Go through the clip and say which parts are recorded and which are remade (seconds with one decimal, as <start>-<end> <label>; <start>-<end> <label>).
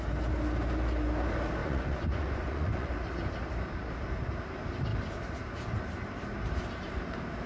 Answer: 0.0-1.6 recorded; 1.6-2.9 remade; 2.9-7.5 recorded